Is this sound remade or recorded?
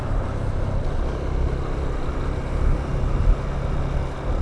recorded